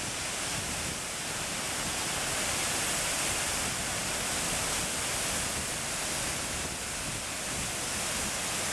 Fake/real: real